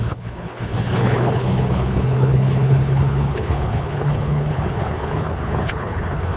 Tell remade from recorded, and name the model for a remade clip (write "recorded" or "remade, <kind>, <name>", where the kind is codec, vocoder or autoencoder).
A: remade, codec, HILCodec